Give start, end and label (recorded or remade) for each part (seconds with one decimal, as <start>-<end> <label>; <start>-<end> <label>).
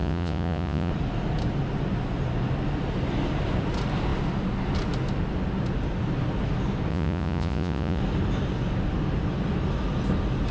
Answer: 0.0-0.9 remade; 0.9-6.9 recorded; 6.9-8.0 remade; 8.0-10.5 recorded